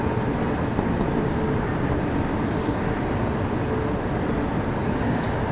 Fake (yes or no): no